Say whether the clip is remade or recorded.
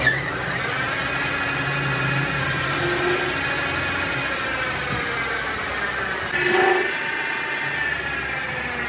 recorded